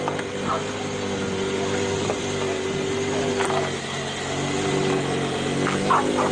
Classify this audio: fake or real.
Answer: real